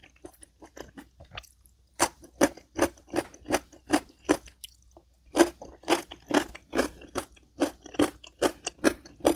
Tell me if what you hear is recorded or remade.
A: recorded